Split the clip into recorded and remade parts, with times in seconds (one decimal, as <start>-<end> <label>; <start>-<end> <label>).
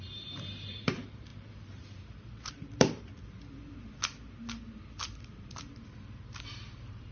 0.0-3.1 remade; 3.1-6.2 recorded; 6.2-7.1 remade